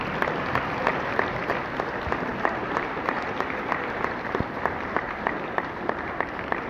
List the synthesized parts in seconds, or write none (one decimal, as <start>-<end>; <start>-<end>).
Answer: 0.9-1.5; 2.3-5.6